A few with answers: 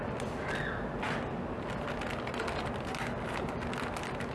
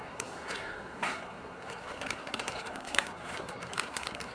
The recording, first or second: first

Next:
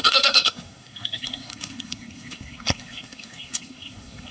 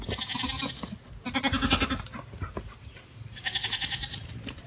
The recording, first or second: second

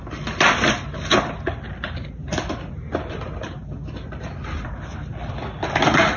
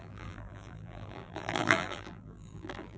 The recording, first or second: first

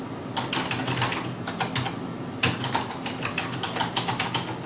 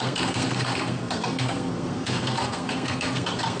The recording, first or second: first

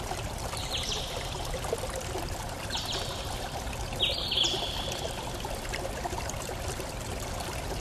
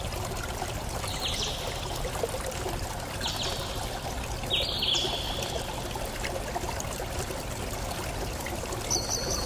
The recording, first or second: second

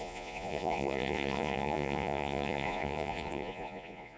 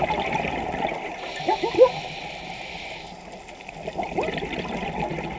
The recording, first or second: second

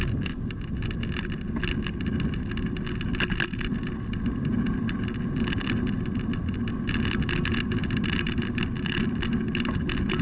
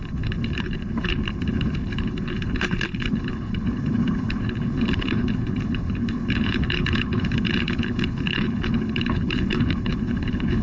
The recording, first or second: first